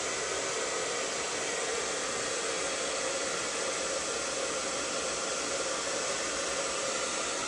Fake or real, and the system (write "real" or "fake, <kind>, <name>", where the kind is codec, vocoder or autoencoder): real